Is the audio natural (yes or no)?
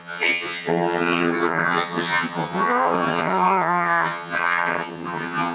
no